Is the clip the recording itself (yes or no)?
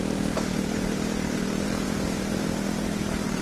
no